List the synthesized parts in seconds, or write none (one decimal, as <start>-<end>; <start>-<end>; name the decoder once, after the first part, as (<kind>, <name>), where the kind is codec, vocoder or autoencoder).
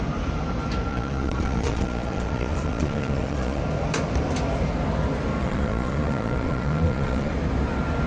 0.9-3.6 (vocoder, Vocos); 5.4-7.3